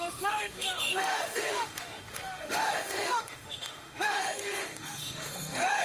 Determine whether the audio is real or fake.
fake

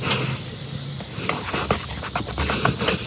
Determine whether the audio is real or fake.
real